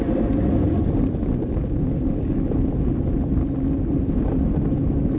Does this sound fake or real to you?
real